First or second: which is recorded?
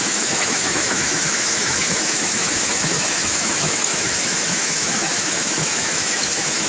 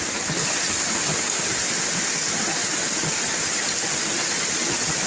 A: second